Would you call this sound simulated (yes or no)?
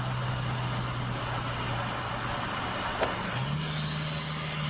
no